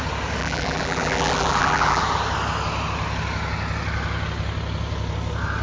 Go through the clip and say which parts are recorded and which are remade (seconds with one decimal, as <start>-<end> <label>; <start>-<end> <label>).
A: 0.0-0.4 recorded; 0.4-2.0 remade; 2.0-5.6 recorded